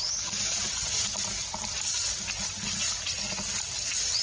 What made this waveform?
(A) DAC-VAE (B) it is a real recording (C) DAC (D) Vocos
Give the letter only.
B